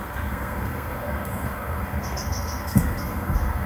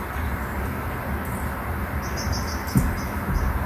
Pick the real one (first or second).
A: second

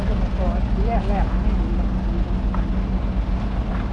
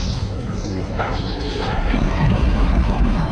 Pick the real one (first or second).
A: first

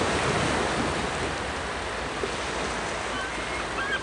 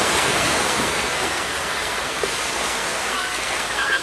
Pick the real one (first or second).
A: first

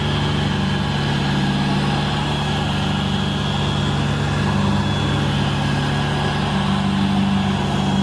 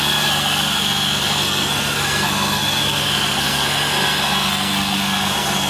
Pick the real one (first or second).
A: first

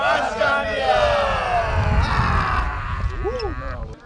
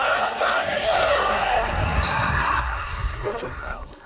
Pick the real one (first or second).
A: first